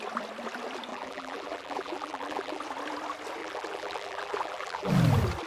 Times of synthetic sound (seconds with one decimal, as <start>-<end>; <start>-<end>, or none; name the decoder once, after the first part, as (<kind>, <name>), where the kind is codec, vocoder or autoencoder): 0.9-2.6 (vocoder, BigVGAN v2); 3.4-4.9